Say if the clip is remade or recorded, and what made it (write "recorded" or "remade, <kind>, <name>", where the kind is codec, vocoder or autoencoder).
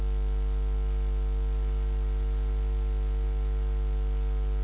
recorded